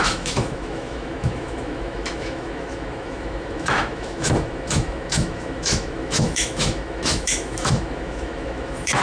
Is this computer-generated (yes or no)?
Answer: yes